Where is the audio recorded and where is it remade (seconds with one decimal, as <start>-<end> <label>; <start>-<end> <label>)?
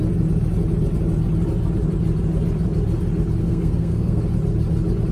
0.0-3.4 recorded; 3.4-4.2 remade; 4.2-5.1 recorded